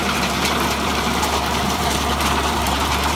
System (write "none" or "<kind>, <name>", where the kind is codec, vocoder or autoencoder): vocoder, BigVGAN v2